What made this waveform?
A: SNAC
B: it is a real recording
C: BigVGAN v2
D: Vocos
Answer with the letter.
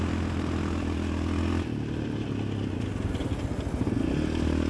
B